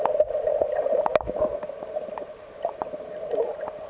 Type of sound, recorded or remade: recorded